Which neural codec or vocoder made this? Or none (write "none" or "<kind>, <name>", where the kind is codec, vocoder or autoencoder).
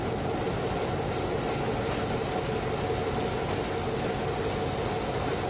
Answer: none